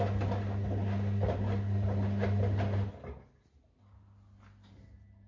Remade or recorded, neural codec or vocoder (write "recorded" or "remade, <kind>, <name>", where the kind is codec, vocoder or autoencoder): recorded